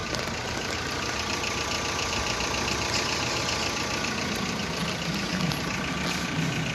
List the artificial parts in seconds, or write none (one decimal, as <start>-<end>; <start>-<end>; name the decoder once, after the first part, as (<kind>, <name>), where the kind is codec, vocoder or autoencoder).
none